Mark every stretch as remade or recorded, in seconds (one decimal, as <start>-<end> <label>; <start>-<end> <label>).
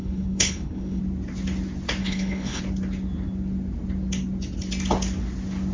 0.0-1.0 remade; 1.0-2.0 recorded; 2.0-2.6 remade; 2.6-5.7 recorded